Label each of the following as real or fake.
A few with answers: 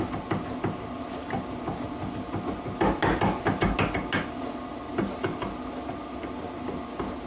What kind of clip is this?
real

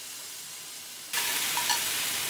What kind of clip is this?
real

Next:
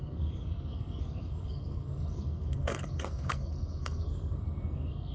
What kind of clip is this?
fake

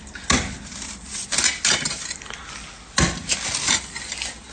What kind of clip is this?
real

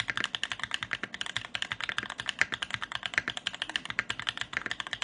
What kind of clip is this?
real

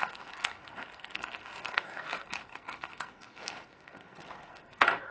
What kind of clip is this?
fake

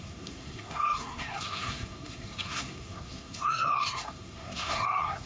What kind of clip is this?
fake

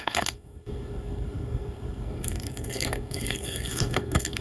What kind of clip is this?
fake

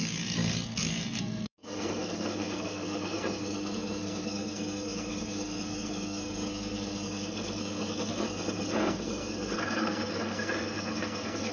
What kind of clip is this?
fake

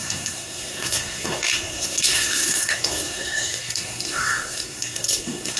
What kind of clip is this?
fake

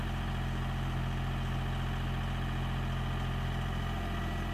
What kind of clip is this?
real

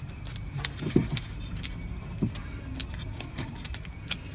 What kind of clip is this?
real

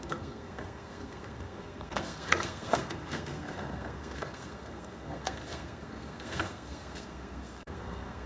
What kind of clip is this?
fake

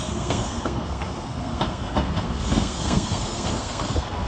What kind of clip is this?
fake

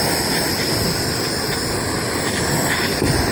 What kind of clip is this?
real